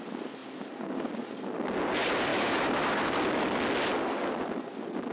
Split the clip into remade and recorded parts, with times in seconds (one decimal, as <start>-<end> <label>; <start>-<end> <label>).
0.0-2.3 recorded; 2.3-3.1 remade; 3.1-5.1 recorded